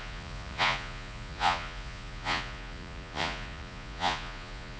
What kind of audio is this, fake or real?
fake